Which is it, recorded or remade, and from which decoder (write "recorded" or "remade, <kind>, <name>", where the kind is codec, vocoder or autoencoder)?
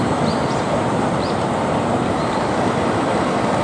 remade, vocoder, BigVGAN v2